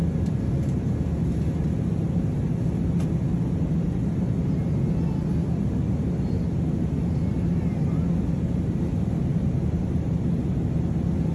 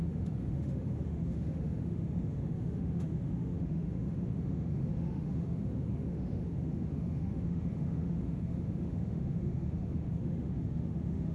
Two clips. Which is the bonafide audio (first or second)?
first